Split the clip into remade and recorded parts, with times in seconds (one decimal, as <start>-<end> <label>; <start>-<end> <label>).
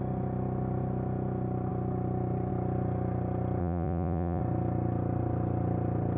0.0-3.6 recorded; 3.6-4.4 remade; 4.4-6.2 recorded